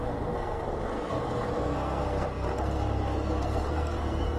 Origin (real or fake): fake